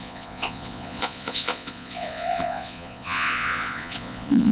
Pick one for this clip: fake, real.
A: fake